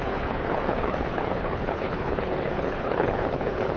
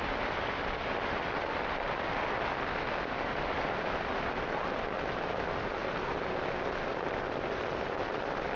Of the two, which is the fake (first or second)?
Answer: first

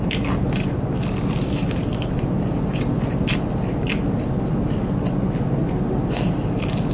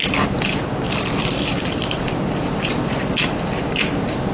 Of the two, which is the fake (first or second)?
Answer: second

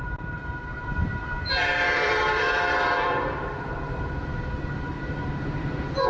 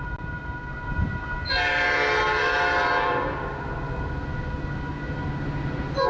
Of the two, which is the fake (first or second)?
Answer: first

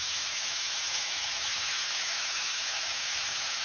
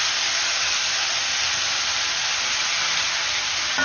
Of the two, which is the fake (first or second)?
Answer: first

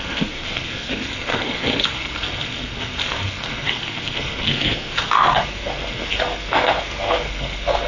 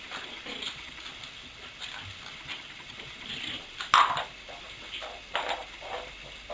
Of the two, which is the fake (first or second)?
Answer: first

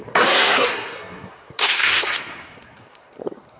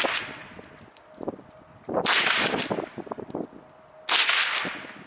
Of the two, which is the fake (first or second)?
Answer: first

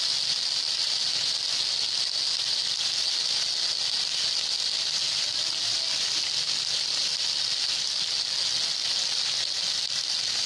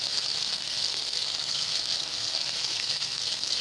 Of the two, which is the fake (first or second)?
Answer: second